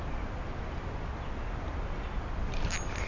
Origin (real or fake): real